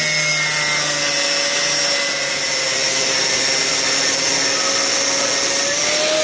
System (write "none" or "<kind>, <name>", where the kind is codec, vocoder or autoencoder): none